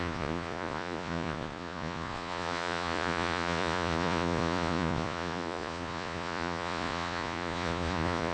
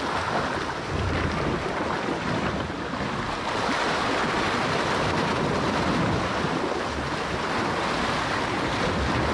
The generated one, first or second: first